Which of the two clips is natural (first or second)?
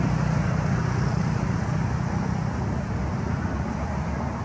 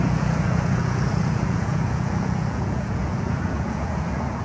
first